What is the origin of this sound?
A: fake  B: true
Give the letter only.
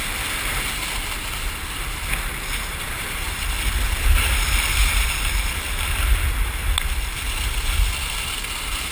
B